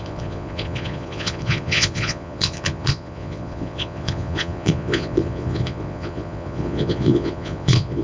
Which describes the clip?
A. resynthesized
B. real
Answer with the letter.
A